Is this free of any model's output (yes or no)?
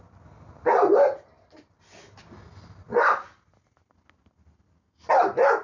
yes